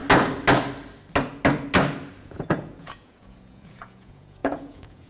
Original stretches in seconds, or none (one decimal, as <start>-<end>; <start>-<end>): 0.0-2.2